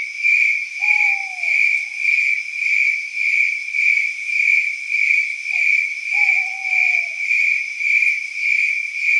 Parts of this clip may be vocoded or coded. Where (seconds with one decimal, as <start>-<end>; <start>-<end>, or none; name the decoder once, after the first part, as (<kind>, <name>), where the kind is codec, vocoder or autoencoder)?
0.0-1.2 (vocoder, BigVGAN v2); 3.8-4.5; 7.0-9.2